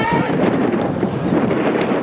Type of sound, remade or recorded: remade